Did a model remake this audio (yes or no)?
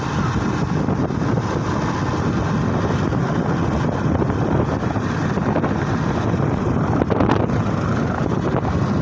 no